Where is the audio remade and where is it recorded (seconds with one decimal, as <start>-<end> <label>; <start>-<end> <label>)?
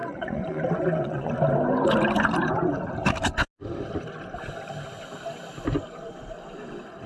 0.0-1.3 remade; 1.3-7.1 recorded